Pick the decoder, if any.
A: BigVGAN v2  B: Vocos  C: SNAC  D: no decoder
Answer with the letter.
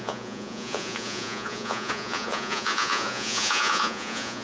B